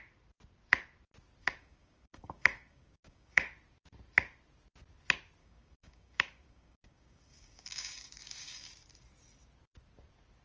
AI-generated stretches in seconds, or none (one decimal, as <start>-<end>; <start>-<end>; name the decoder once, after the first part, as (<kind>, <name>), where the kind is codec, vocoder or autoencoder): 1.6-3.5 (codec, DAC); 5.4-8.7